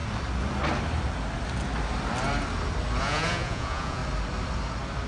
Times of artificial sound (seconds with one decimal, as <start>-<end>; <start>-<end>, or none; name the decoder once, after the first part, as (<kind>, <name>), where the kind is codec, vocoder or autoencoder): 3.0-4.0 (vocoder, Vocos)